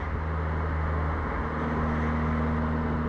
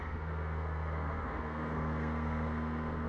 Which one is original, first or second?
first